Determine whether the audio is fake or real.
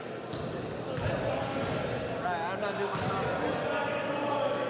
real